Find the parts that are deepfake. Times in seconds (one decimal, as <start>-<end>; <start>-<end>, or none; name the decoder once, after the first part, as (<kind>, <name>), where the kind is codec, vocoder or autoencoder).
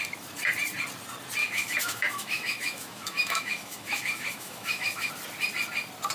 1.4-5.1 (autoencoder, DAC-VAE)